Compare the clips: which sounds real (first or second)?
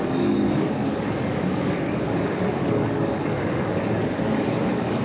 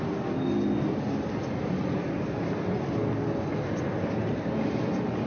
second